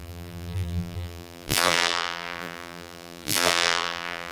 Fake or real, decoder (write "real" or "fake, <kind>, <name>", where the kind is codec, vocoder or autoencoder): fake, vocoder, BigVGAN v2